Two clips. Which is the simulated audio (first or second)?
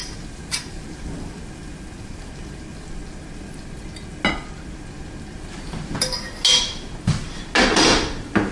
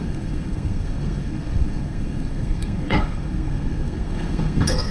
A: second